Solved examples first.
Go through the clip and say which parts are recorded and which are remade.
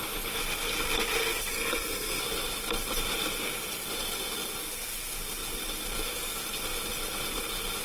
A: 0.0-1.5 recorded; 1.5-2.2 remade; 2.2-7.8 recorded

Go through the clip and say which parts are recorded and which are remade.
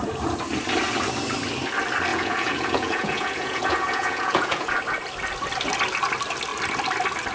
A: 0.0-2.1 recorded; 2.1-4.7 remade; 4.7-7.3 recorded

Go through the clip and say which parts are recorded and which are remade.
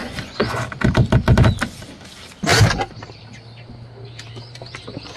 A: 0.0-0.6 remade; 0.6-5.2 recorded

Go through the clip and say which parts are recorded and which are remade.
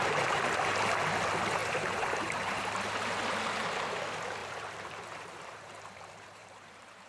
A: 0.0-1.6 recorded; 1.6-2.6 remade; 2.6-4.4 recorded; 4.4-7.1 remade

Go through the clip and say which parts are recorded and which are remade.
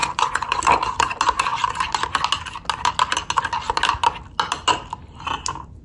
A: 0.0-0.6 remade; 0.6-5.8 recorded